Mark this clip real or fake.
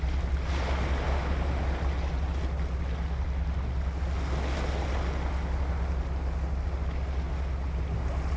real